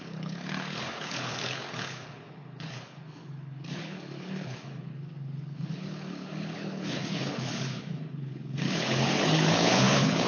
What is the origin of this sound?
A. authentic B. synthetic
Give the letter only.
B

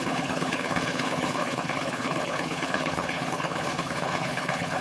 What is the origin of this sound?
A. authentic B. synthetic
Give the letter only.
B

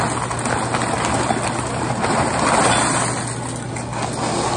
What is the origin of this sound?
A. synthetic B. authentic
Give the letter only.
B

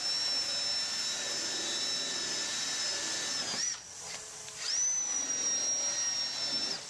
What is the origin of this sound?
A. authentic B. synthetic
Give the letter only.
A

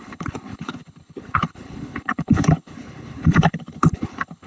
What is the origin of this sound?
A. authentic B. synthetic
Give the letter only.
B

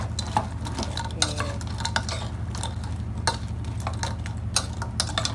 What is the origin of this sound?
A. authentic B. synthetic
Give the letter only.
A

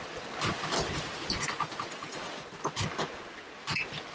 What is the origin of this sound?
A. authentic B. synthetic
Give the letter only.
A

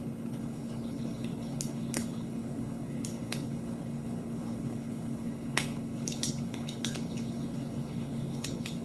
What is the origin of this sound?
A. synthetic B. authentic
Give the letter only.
A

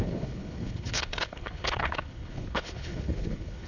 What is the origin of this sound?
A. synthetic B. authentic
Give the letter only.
A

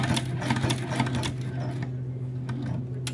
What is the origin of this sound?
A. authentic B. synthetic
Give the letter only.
A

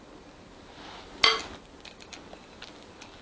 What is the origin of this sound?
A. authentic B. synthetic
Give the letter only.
A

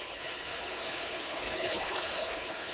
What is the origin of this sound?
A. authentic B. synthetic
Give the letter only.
B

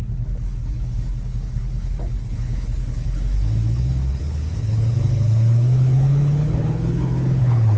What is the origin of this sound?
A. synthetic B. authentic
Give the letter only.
A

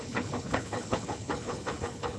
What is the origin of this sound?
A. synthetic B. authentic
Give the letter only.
A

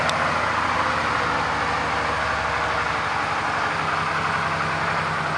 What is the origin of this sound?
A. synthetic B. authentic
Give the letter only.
B